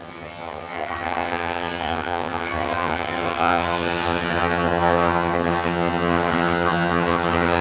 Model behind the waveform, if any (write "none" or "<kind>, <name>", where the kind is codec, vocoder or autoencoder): vocoder, HiFi-GAN